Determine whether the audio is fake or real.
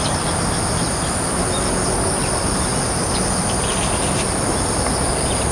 real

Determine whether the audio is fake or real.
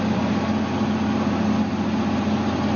real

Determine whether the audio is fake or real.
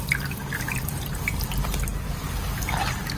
fake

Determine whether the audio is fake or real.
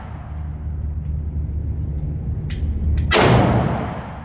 real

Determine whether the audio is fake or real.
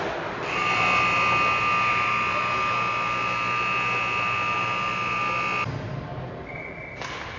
real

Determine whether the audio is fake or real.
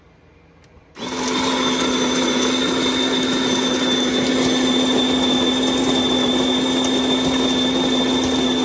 real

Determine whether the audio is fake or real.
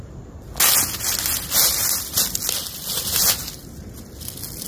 real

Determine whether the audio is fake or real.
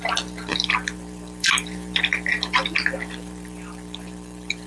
fake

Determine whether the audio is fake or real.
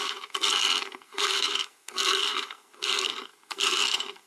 fake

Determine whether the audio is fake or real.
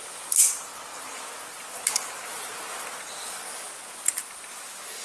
real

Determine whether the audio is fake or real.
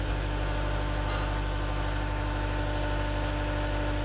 real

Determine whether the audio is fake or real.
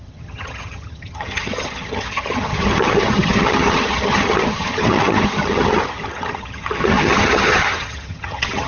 fake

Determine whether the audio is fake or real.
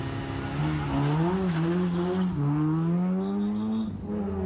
real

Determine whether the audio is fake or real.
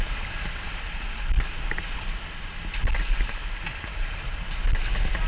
real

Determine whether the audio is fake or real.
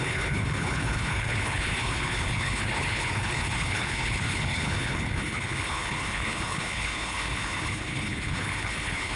fake